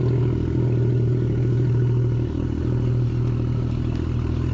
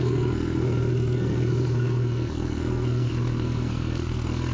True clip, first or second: first